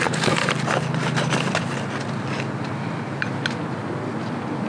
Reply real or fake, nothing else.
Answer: real